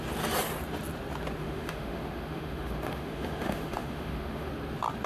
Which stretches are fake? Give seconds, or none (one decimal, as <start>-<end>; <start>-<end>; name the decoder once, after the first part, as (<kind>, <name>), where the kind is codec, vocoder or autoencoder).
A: 1.4-4.5 (autoencoder, DAC-VAE)